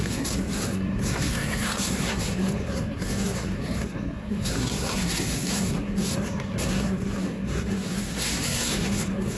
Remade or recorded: remade